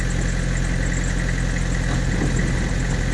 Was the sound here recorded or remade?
recorded